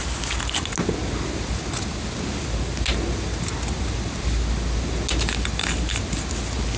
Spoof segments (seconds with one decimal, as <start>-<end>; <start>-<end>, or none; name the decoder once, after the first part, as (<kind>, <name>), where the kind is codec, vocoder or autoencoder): none